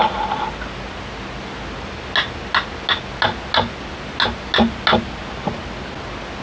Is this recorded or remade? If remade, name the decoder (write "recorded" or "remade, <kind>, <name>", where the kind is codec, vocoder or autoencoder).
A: recorded